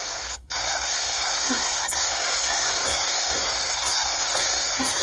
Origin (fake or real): fake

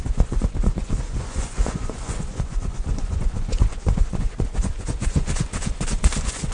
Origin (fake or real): fake